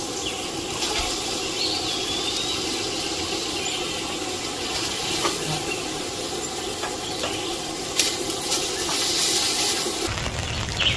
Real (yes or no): yes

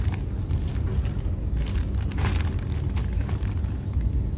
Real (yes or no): yes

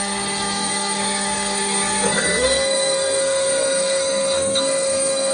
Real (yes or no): no